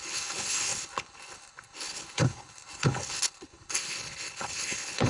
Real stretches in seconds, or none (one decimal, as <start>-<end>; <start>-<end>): none